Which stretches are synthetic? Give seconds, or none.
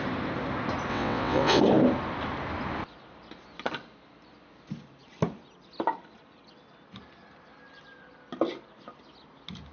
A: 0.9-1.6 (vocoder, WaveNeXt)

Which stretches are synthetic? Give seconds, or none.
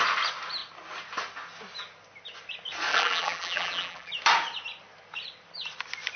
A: 2.9-4.1 (vocoder, BigVGAN v2)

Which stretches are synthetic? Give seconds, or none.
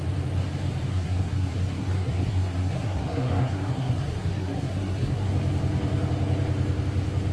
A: 0.9-5.3 (codec, SNAC)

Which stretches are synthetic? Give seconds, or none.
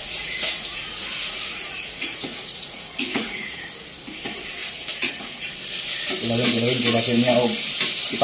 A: 0.0-3.7 (vocoder, Vocos); 4.6-5.5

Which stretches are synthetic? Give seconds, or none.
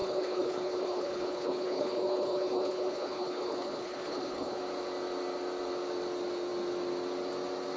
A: 0.0-4.6 (codec, HILCodec)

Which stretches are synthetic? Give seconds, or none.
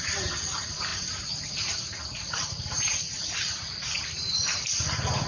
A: 0.0-5.3 (vocoder, BigVGAN v2)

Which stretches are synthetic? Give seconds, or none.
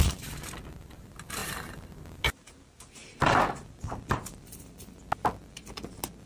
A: none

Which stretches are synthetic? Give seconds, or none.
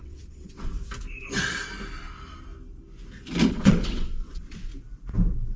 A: 0.0-0.7 (vocoder, WaveNeXt); 3.5-4.7